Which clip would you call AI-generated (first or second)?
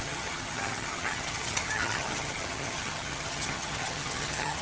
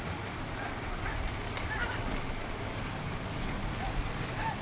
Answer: first